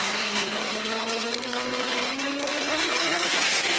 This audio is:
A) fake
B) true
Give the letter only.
A